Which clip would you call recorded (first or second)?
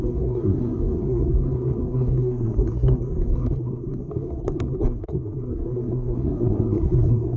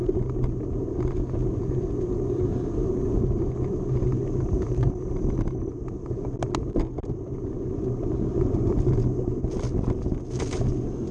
second